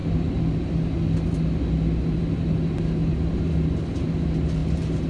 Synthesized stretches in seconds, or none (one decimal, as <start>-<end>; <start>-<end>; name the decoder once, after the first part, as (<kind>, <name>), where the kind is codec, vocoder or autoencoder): none